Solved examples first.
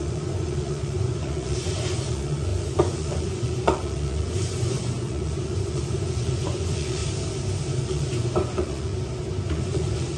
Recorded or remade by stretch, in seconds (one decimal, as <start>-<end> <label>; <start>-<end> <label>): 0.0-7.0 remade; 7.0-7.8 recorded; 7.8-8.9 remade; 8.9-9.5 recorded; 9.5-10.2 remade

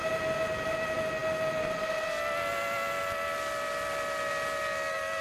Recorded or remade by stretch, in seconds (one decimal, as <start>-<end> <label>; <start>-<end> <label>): 0.0-5.2 recorded

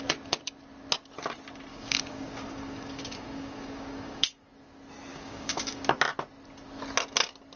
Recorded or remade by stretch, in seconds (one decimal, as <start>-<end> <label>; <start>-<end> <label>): 0.0-1.7 recorded; 1.7-4.5 remade; 4.5-5.1 recorded; 5.1-5.8 remade; 5.8-7.6 recorded

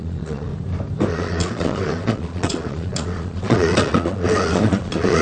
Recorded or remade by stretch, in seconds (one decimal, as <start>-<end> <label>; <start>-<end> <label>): 0.0-0.5 remade; 0.5-1.1 recorded; 1.1-5.2 remade

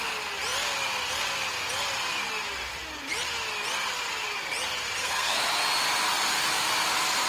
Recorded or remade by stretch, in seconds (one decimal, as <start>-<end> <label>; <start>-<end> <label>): 0.0-5.0 recorded; 5.0-5.5 remade; 5.5-7.3 recorded

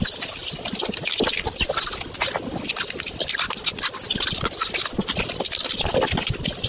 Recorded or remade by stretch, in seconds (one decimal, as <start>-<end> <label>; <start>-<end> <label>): 0.0-6.7 recorded

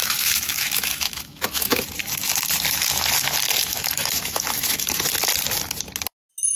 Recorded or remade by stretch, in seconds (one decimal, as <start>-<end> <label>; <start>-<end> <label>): 0.0-1.8 remade; 1.8-3.7 recorded; 3.7-5.0 remade; 5.0-6.6 recorded

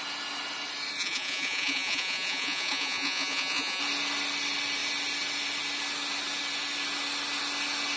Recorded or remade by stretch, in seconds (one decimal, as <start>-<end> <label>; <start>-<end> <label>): 0.0-1.0 recorded; 1.0-3.8 remade; 3.8-8.0 recorded